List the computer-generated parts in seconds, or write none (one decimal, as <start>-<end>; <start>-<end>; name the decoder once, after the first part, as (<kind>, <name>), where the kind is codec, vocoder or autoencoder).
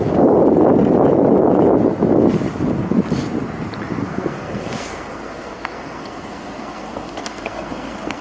4.0-8.2 (codec, SNAC)